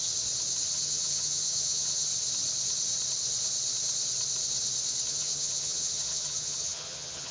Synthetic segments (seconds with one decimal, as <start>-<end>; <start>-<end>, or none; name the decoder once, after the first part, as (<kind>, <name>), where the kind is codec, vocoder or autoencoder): 0.7-2.1 (vocoder, HiFi-GAN); 5.1-7.3